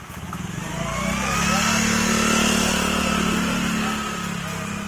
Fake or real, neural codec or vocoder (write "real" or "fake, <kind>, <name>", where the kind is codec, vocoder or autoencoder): real